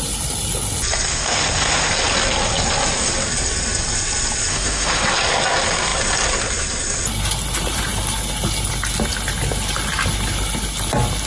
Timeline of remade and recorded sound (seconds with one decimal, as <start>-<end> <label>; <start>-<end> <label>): 0.0-1.1 recorded; 1.1-1.9 remade; 1.9-4.5 recorded; 4.5-5.0 remade; 5.0-11.3 recorded